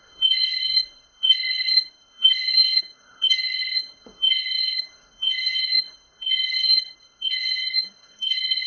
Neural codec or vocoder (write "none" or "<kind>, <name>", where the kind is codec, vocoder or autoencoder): codec, SNAC